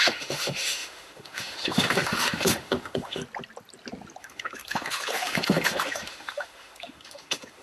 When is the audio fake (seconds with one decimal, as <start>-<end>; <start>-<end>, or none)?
0.0-3.2; 4.2-7.6